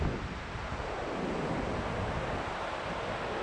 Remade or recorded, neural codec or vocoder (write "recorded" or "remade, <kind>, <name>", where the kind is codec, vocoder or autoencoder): recorded